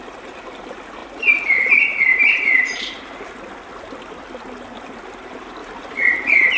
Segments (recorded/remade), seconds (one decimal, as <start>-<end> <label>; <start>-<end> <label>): 0.0-1.0 recorded; 1.0-1.7 remade; 1.7-2.1 recorded; 2.1-3.0 remade; 3.0-5.6 recorded; 5.6-6.6 remade